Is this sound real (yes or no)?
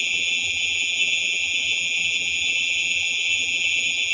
no